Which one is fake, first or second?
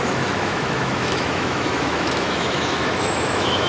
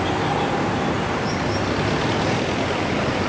first